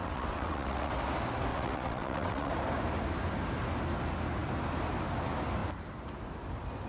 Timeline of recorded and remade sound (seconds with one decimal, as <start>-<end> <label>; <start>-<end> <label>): 0.0-0.9 remade; 0.9-1.5 recorded; 1.5-2.5 remade; 2.5-6.9 recorded